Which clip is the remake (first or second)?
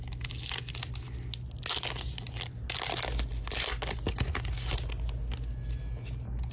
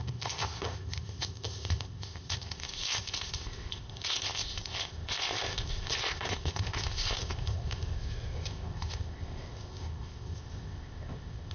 second